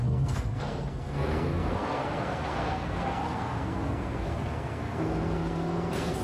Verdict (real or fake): fake